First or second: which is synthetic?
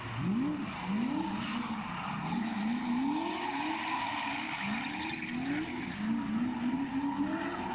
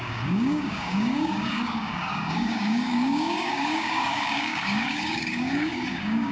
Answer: second